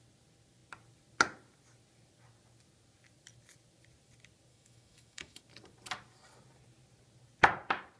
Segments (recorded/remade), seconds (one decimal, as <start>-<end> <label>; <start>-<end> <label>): 0.0-4.5 recorded; 4.5-5.4 remade; 5.4-8.0 recorded